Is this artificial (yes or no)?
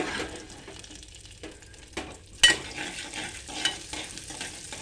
no